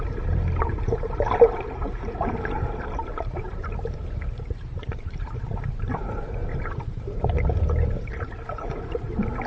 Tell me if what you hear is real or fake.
fake